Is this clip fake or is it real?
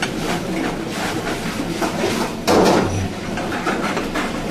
real